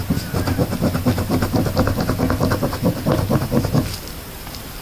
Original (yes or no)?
yes